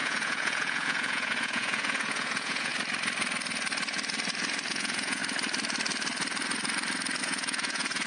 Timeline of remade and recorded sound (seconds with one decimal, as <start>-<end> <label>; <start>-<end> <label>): 0.0-2.7 remade; 2.7-4.7 recorded; 4.7-5.2 remade; 5.2-7.2 recorded; 7.2-8.1 remade